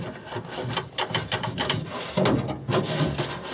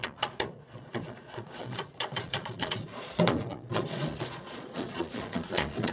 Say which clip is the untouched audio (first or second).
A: first